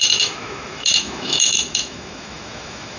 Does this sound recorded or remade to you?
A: remade